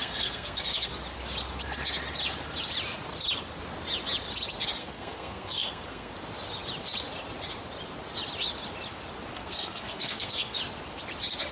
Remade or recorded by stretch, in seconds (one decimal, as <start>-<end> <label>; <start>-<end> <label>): 0.0-0.9 remade; 0.9-4.8 recorded; 4.8-6.1 remade; 6.1-9.3 recorded; 9.3-10.6 remade; 10.6-11.5 recorded

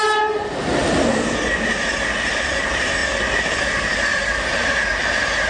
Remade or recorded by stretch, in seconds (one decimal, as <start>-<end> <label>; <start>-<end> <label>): 0.0-0.8 remade; 0.8-1.5 recorded; 1.5-3.0 remade; 3.0-3.6 recorded; 3.6-5.5 remade

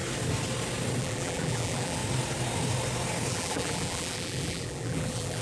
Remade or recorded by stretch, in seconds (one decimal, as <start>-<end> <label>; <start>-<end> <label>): 0.0-1.0 recorded; 1.0-2.0 remade; 2.0-3.3 recorded; 3.3-5.4 remade

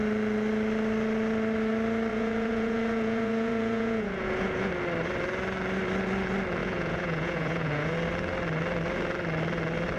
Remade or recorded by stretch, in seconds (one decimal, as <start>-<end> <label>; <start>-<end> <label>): 0.0-2.1 recorded; 2.1-4.7 remade; 4.7-6.6 recorded; 6.6-7.9 remade; 7.9-10.0 recorded

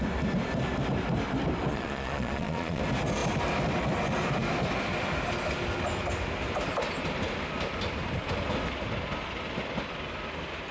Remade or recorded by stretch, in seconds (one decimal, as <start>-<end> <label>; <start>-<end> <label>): 0.0-1.7 recorded; 1.7-2.8 remade; 2.8-10.7 recorded

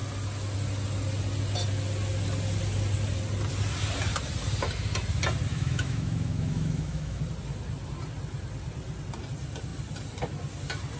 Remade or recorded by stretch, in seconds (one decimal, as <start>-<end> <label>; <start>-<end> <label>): 0.0-5.5 recorded; 5.5-7.2 remade; 7.2-11.0 recorded

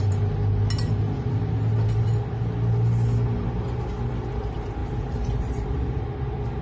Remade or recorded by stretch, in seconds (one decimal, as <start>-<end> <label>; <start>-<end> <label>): 0.0-4.8 recorded; 4.8-6.0 remade; 6.0-6.6 recorded